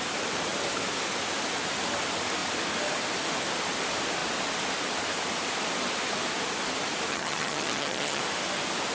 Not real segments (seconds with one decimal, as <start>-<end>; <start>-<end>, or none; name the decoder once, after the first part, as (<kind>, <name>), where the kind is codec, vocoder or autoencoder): 7.1-8.2 (vocoder, HiFi-GAN)